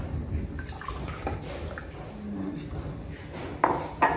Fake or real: real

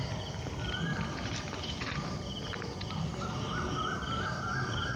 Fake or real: real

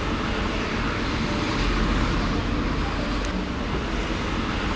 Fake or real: real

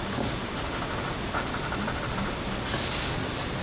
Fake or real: real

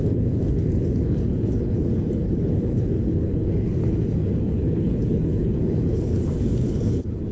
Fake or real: fake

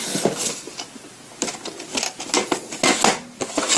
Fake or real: real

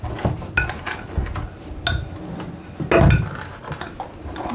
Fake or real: real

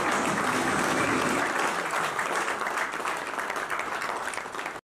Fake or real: real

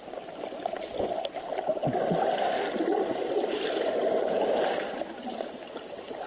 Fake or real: real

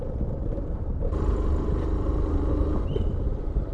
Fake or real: real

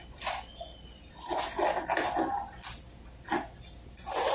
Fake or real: real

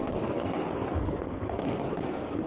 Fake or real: fake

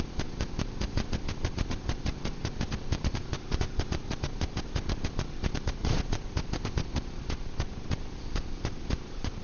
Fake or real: fake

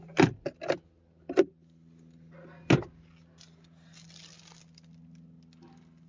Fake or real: real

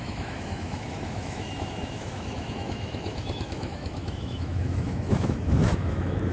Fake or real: fake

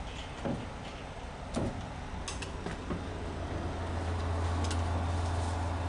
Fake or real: real